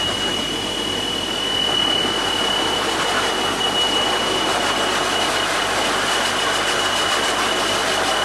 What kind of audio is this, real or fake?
real